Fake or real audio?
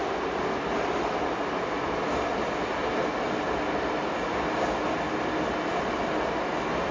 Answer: real